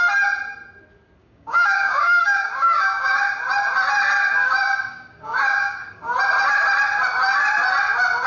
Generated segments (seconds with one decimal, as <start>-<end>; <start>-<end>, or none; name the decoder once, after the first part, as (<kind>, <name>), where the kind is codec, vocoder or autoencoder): 1.2-3.2 (codec, DAC); 4.4-6.1